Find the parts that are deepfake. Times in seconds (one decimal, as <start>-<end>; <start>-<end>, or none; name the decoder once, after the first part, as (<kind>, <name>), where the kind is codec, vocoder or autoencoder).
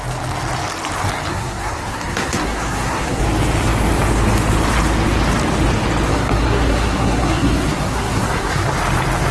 1.3-3.2 (codec, SNAC); 6.1-8.7